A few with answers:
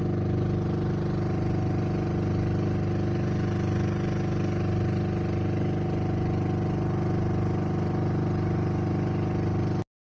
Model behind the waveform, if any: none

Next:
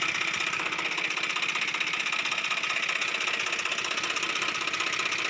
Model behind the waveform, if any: none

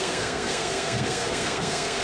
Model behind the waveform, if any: codec, SNAC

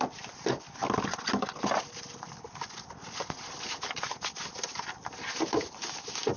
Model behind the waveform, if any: none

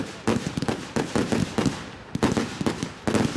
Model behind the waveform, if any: none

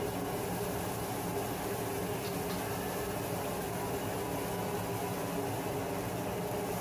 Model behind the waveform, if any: none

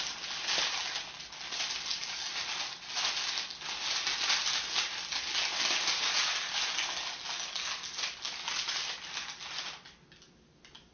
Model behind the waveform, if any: none